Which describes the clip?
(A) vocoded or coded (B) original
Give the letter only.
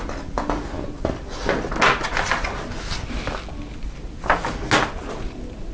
B